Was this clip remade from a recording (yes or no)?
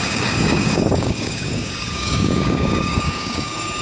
yes